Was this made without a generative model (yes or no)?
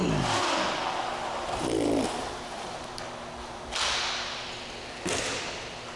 yes